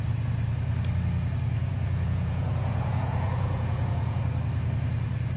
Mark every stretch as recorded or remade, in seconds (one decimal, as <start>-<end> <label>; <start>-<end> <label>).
0.0-1.6 recorded; 1.6-4.2 remade; 4.2-5.4 recorded